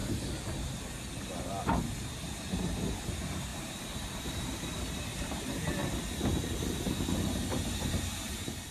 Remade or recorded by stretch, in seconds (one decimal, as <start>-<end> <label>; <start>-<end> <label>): 0.0-2.1 recorded; 2.1-5.8 remade; 5.8-7.8 recorded; 7.8-8.7 remade